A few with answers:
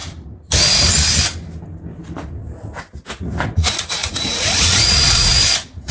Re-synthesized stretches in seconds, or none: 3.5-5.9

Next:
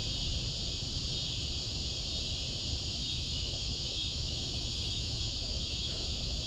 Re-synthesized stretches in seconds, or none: 3.0-6.5

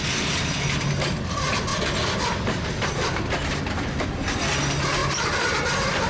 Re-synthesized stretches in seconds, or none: none

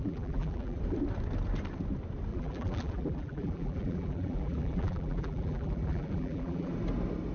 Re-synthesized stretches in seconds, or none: 0.0-0.8; 2.3-6.7

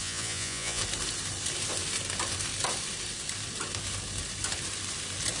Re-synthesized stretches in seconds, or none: 0.0-0.8